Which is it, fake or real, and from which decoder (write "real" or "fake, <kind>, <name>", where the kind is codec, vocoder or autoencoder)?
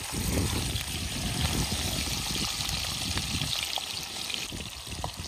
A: real